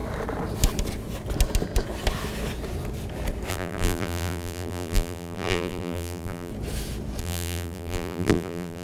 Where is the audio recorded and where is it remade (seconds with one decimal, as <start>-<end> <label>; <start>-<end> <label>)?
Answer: 0.0-3.5 recorded; 3.5-6.5 remade; 6.5-7.2 recorded; 7.2-8.8 remade